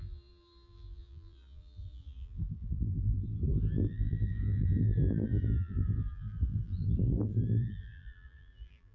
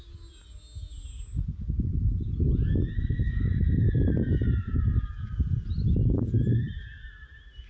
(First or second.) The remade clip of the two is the first